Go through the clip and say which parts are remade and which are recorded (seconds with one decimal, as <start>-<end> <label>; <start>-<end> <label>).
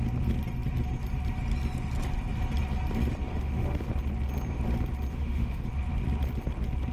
0.0-3.3 recorded; 3.3-3.9 remade; 3.9-5.1 recorded; 5.1-5.7 remade; 5.7-6.9 recorded